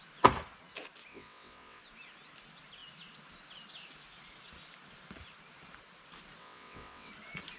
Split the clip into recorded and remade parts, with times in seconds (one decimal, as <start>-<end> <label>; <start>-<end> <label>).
0.0-1.1 recorded; 1.1-1.8 remade; 1.8-6.4 recorded; 6.4-7.1 remade; 7.1-7.6 recorded